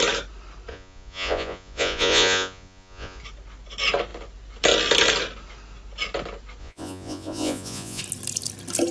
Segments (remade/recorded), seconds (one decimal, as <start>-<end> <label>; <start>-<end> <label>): 0.0-0.7 recorded; 0.7-3.2 remade; 3.2-6.6 recorded; 6.6-8.0 remade; 8.0-8.9 recorded